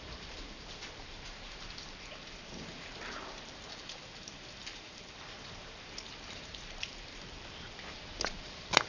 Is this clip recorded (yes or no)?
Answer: no